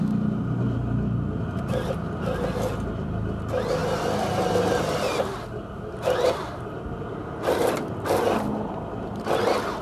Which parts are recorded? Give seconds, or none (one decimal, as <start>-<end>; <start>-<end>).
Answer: 0.0-3.8; 4.3-9.8